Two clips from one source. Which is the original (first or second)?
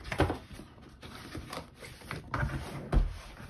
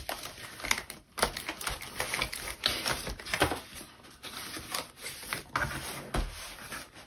second